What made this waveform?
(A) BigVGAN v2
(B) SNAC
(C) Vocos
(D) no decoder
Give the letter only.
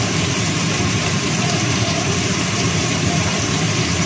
A